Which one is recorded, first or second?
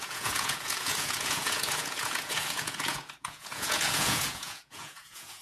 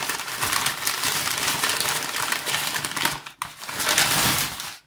second